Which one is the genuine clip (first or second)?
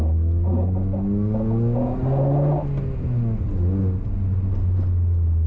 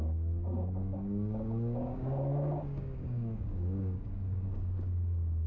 first